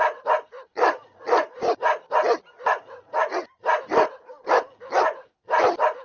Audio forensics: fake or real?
real